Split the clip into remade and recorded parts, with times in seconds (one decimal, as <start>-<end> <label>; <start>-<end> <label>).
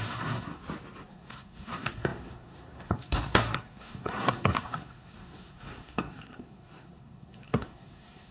0.0-0.6 remade; 0.6-1.1 recorded; 1.1-8.3 remade